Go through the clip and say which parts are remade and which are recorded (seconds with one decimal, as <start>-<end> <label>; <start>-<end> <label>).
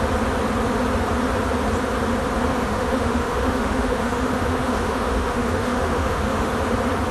0.0-2.5 recorded; 2.5-6.5 remade; 6.5-7.1 recorded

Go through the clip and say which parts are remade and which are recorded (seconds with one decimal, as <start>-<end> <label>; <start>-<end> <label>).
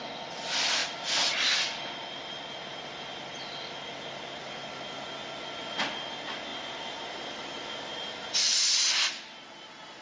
0.0-10.0 recorded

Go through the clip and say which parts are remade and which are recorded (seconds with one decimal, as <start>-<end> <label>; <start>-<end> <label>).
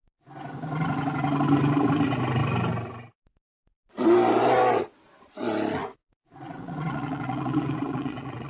0.0-5.8 recorded; 5.8-8.5 remade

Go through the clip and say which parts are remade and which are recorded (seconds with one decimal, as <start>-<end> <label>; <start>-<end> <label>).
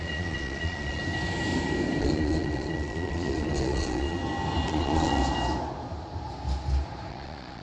0.0-1.0 remade; 1.0-2.0 recorded; 2.0-4.2 remade; 4.2-4.7 recorded; 4.7-5.2 remade; 5.2-7.1 recorded; 7.1-7.6 remade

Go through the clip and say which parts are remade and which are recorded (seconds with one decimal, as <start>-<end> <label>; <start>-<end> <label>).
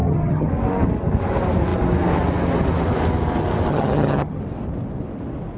0.0-0.5 remade; 0.5-3.7 recorded; 3.7-4.4 remade; 4.4-5.6 recorded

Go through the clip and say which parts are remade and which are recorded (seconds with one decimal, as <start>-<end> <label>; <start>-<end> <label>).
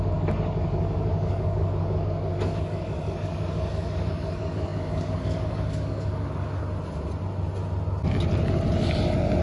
0.0-6.6 remade; 6.6-9.4 recorded